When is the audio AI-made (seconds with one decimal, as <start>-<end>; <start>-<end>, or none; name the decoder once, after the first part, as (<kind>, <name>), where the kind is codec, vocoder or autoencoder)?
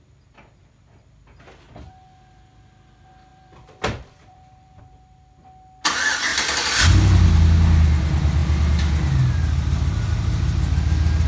3.3-4.8 (vocoder, BigVGAN v2); 6.3-6.8